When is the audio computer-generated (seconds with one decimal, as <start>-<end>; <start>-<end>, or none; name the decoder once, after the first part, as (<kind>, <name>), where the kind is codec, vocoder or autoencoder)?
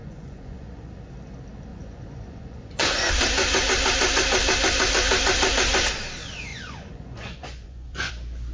0.0-0.9 (vocoder, Vocos); 1.7-3.1; 6.5-8.1